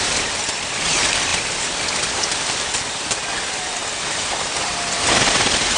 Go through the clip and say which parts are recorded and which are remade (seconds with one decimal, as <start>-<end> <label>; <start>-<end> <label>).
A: 0.0-5.8 recorded